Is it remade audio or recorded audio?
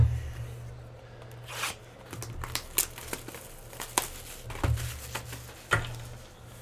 recorded